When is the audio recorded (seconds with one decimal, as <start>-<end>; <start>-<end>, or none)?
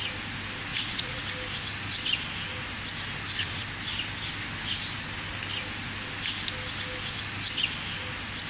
0.0-0.7; 1.2-8.5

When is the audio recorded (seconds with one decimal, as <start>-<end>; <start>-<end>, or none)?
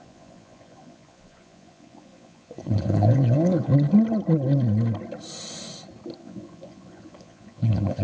3.7-6.2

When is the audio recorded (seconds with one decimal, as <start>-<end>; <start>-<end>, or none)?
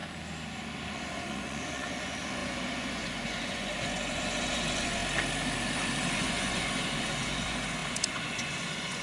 0.0-0.9; 5.0-6.1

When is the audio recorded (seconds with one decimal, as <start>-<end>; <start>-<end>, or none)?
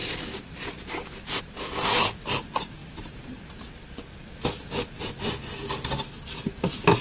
0.0-7.0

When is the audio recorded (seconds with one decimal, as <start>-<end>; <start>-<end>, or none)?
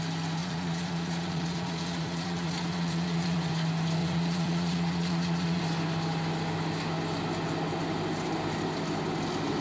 0.0-0.4; 3.5-4.0; 5.6-9.6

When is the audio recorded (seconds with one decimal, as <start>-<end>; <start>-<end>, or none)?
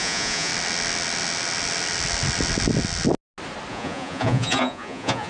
0.5-3.7